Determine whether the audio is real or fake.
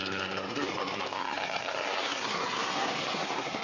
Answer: fake